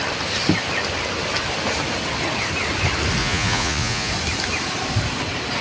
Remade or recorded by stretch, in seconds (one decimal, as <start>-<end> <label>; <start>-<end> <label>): 0.0-3.2 recorded; 3.2-4.1 remade; 4.1-5.6 recorded